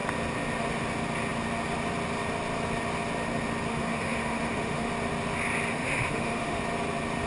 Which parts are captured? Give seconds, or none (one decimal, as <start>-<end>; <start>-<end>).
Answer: 0.0-3.7; 4.9-5.7; 6.6-7.3